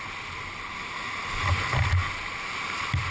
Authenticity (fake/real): real